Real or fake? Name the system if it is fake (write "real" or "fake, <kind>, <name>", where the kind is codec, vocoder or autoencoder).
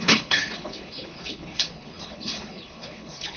fake, codec, HILCodec